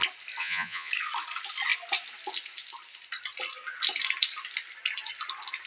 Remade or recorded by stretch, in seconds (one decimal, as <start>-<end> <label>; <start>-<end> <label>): 0.0-0.4 recorded; 0.4-0.9 remade; 0.9-5.7 recorded